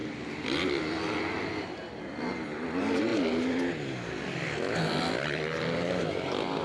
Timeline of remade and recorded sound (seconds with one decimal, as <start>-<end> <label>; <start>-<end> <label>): 0.0-6.6 recorded